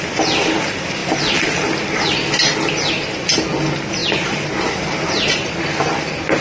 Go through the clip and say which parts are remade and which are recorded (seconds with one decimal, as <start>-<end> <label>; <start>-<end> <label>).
0.0-6.4 recorded